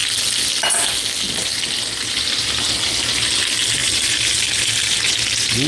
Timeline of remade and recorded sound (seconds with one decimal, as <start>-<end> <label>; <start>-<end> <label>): 0.0-3.8 recorded; 3.8-5.1 remade; 5.1-5.7 recorded